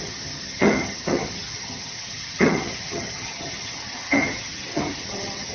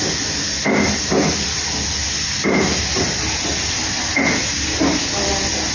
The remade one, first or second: first